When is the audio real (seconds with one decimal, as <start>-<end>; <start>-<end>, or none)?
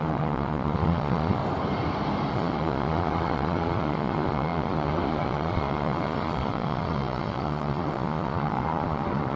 1.4-2.3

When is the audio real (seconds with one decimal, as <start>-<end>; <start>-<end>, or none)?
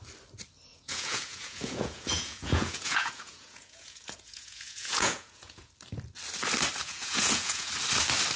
0.0-0.7; 5.7-6.8; 7.7-8.4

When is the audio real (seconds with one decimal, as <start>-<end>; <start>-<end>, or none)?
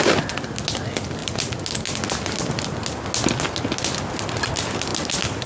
0.0-5.5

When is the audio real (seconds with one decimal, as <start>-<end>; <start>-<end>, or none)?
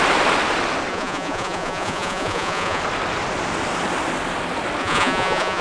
0.0-0.9; 2.8-4.8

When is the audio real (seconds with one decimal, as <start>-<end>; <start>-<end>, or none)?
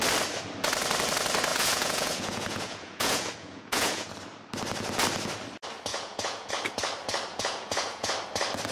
0.0-1.5; 4.1-5.9; 6.5-7.3; 8.1-8.7